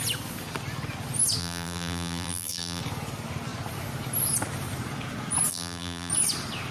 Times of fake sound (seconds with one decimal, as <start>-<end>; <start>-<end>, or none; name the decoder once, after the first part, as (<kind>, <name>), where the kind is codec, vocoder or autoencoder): 1.4-2.8 (vocoder, BigVGAN v2); 5.5-6.1